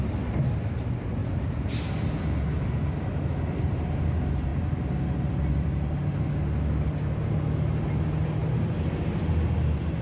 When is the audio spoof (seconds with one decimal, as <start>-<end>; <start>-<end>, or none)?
1.2-1.9; 8.4-9.0